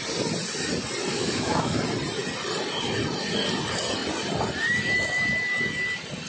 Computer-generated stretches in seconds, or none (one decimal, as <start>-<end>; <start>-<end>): 1.1-1.8